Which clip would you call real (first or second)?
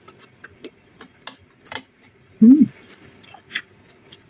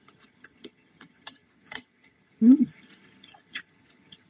first